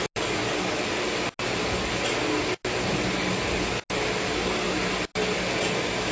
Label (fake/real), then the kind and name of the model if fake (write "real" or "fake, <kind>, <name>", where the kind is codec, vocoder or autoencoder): real